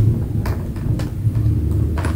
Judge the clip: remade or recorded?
recorded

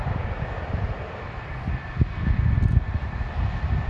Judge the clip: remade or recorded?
recorded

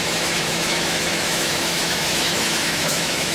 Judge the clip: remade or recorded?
remade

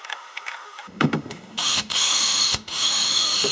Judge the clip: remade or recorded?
remade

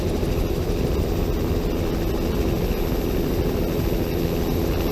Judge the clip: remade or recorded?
recorded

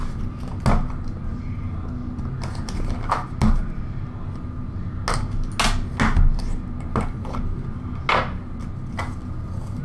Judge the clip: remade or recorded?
recorded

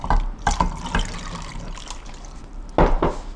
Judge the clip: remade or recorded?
recorded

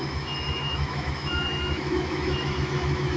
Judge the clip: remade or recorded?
remade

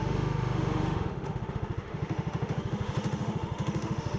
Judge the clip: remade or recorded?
remade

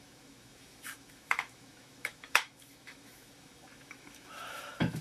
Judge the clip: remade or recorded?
remade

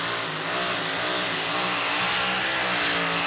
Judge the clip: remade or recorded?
recorded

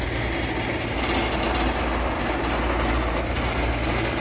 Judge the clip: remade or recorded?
recorded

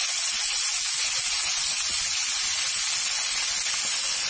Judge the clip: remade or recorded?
recorded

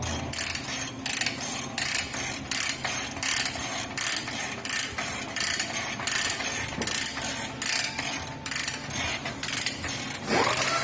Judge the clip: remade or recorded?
recorded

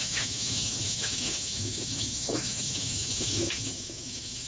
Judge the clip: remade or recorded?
remade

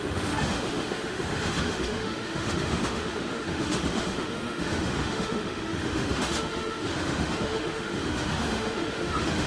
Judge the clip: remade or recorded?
remade